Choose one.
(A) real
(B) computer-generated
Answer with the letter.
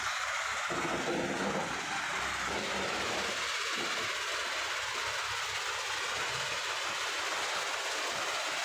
A